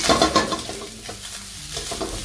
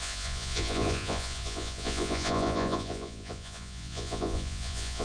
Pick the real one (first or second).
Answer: first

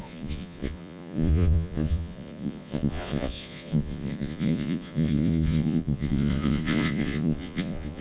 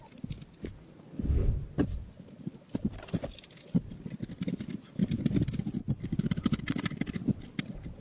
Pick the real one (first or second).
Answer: second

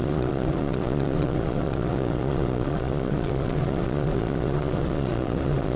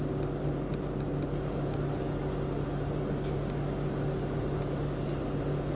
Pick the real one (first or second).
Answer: second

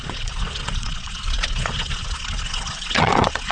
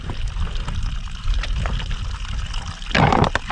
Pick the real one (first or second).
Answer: second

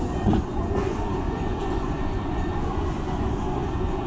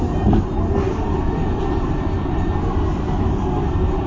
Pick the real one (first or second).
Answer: second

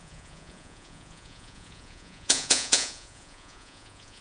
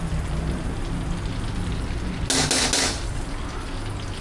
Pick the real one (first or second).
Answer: second